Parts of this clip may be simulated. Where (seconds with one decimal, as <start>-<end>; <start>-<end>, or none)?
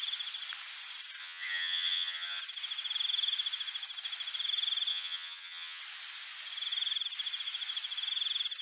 1.2-2.4; 4.9-5.8